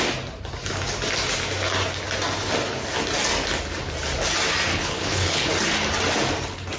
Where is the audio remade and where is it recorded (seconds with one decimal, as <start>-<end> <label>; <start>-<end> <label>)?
0.0-4.7 recorded; 4.7-5.5 remade; 5.5-6.8 recorded